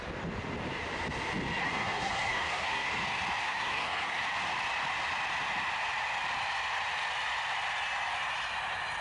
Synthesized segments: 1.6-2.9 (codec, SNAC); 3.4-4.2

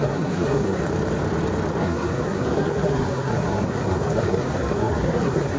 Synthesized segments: 0.0-0.8 (codec, SNAC); 1.8-5.6